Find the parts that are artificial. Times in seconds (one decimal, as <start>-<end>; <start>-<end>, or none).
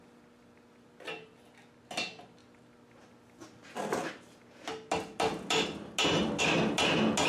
none